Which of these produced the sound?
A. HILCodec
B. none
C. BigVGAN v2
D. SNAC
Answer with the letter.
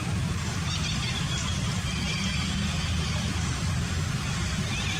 B